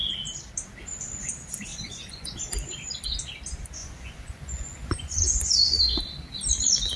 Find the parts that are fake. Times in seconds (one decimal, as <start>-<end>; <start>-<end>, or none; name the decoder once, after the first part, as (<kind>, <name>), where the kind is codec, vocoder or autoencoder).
1.7-2.4 (vocoder, Vocos); 3.8-6.0